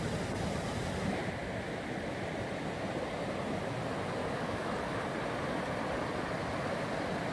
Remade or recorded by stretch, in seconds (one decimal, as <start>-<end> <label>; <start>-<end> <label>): 0.0-4.2 recorded; 4.2-4.7 remade; 4.7-7.3 recorded